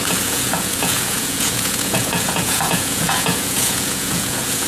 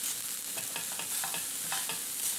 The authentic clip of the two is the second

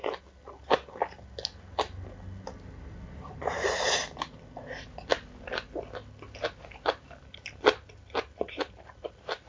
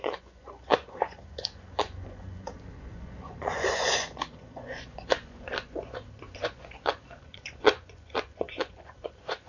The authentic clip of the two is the first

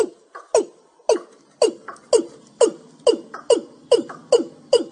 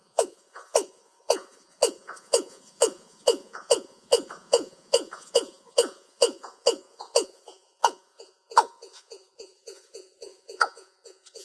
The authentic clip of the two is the first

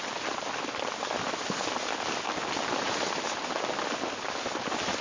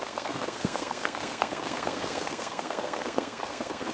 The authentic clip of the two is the first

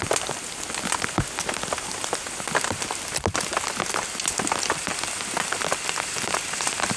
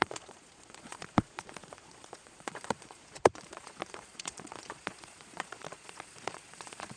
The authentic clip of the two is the first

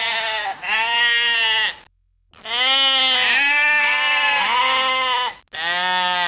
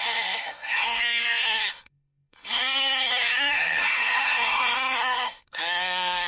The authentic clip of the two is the first